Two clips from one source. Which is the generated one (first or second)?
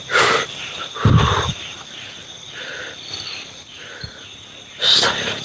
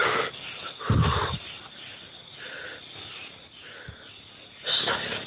first